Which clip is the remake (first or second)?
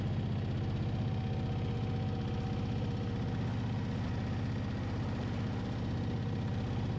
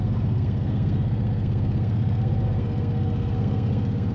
second